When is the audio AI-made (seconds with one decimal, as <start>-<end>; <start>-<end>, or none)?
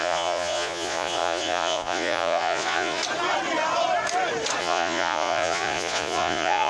0.0-3.0; 4.6-6.7